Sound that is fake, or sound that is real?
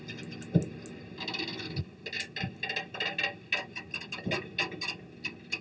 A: real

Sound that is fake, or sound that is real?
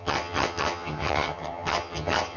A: fake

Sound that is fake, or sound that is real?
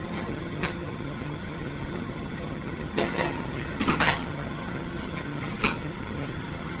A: fake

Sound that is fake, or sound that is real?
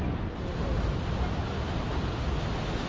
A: real